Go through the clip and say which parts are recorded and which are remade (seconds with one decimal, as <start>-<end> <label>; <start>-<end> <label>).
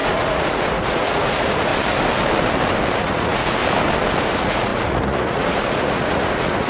0.0-1.7 remade; 1.7-2.9 recorded; 2.9-3.6 remade; 3.6-4.2 recorded; 4.2-6.7 remade